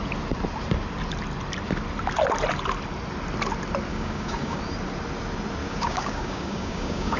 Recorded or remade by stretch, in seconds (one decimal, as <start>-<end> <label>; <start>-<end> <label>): 0.0-3.9 recorded; 3.9-4.6 remade; 4.6-5.6 recorded; 5.6-7.2 remade